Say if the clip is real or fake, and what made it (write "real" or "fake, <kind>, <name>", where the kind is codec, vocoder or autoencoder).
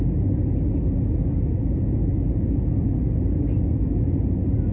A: real